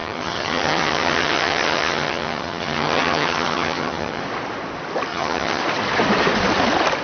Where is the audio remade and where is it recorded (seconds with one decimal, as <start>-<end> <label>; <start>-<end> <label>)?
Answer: 0.0-4.2 remade; 4.2-5.1 recorded; 5.1-5.6 remade; 5.6-7.0 recorded